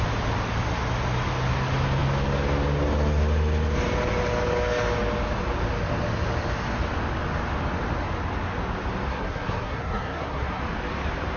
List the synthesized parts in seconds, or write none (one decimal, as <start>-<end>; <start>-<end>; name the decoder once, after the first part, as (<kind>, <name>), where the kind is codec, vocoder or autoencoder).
9.1-10.6 (codec, SNAC)